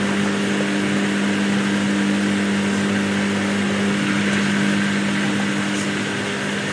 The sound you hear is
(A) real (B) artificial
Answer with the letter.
A